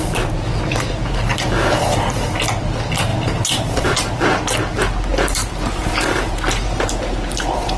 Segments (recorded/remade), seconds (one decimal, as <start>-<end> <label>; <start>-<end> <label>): 0.0-3.1 recorded; 3.1-4.0 remade; 4.0-5.1 recorded; 5.1-7.8 remade